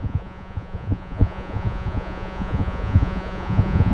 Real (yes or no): no